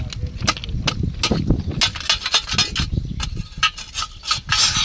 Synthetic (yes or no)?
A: no